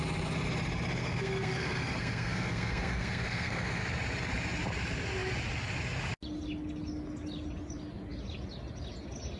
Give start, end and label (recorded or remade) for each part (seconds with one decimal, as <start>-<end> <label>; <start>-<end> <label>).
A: 0.0-1.0 recorded; 1.0-3.8 remade; 3.8-9.4 recorded

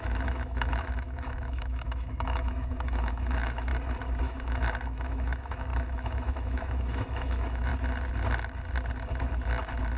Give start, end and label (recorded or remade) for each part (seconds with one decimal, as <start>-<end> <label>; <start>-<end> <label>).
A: 0.0-3.7 remade; 3.7-4.2 recorded; 4.2-7.7 remade; 7.7-10.0 recorded

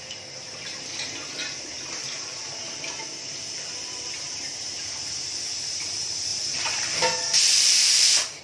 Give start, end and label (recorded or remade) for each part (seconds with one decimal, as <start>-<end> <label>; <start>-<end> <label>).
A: 0.0-2.0 recorded; 2.0-2.6 remade; 2.6-6.3 recorded; 6.3-8.4 remade

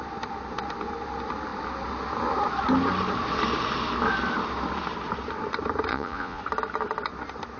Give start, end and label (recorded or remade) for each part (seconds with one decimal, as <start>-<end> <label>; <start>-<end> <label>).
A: 0.0-5.9 recorded; 5.9-6.4 remade; 6.4-7.6 recorded

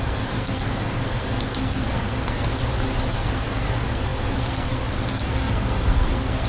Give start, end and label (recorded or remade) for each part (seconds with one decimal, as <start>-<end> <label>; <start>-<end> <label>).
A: 0.0-2.5 remade; 2.5-3.2 recorded; 3.2-6.5 remade

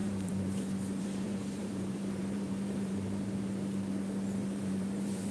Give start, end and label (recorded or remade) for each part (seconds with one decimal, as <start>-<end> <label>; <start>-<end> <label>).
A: 0.0-3.2 remade; 3.2-4.4 recorded; 4.4-5.3 remade